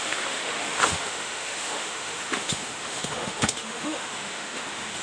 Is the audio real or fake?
fake